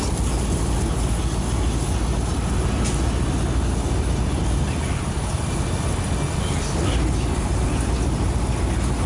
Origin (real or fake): real